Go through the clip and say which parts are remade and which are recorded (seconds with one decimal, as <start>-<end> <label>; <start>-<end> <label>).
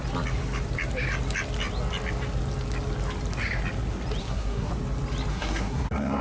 0.0-4.2 recorded; 4.2-4.7 remade; 4.7-5.3 recorded; 5.3-6.2 remade